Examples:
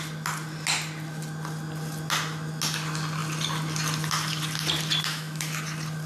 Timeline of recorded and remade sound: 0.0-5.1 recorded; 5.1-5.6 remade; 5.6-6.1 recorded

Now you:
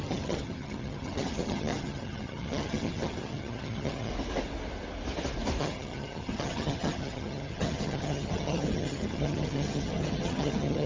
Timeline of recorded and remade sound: 0.0-4.1 remade; 4.1-5.6 recorded; 5.6-10.9 remade

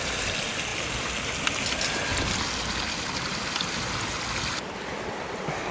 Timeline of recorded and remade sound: 0.0-5.7 recorded

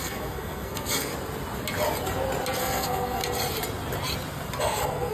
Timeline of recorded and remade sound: 0.0-1.1 remade; 1.1-2.6 recorded; 2.6-3.2 remade; 3.2-4.6 recorded; 4.6-5.1 remade

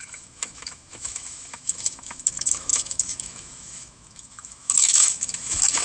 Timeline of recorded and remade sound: 0.0-5.8 remade

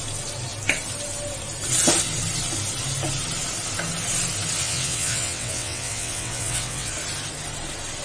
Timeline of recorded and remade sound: 0.0-4.6 recorded; 4.6-6.9 remade; 6.9-8.0 recorded

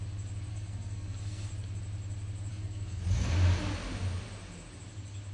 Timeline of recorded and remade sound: 0.0-0.5 recorded; 0.5-1.5 remade; 1.5-2.5 recorded; 2.5-3.0 remade; 3.0-5.3 recorded

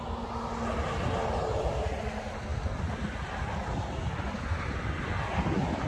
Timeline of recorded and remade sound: 0.0-5.9 recorded